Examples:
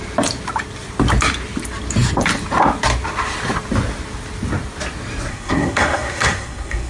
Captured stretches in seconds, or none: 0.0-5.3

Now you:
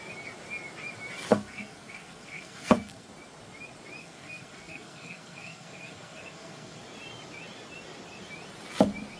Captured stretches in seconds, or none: 0.0-1.3; 3.1-4.0; 6.8-9.2